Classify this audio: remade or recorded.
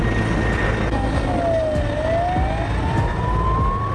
recorded